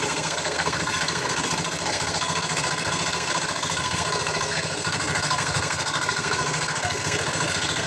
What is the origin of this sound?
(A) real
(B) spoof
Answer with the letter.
B